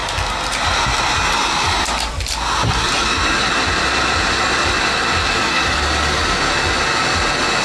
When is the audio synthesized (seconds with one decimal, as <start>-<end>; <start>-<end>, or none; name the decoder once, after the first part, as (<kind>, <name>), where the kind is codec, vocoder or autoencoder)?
5.2-6.4 (codec, DAC)